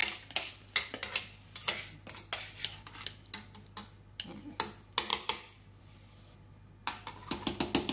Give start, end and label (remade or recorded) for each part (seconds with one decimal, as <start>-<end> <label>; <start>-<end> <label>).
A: 0.0-7.9 recorded